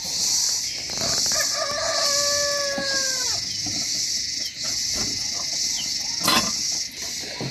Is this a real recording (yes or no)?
yes